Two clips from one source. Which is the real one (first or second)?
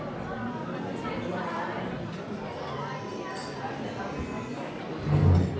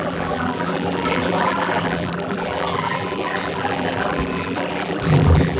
first